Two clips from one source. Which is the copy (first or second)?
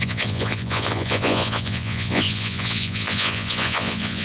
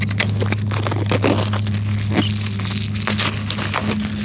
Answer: first